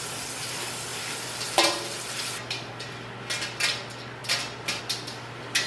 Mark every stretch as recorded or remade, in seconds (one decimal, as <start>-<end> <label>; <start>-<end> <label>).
0.0-0.9 recorded; 0.9-2.7 remade; 2.7-4.2 recorded; 4.2-4.8 remade; 4.8-5.7 recorded